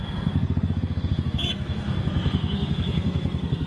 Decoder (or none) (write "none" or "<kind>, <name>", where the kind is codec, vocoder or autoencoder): codec, SNAC